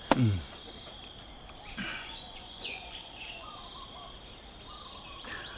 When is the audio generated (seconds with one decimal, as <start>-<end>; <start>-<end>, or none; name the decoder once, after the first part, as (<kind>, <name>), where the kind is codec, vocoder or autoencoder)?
1.9-3.6 (vocoder, Vocos)